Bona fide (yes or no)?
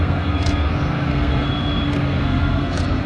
no